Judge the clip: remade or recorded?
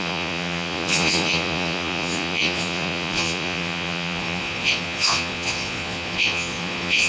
remade